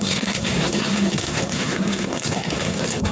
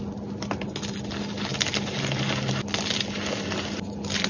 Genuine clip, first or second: second